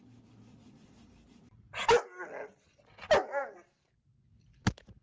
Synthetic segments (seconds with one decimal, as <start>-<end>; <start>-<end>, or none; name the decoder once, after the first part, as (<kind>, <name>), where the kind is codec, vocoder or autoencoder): none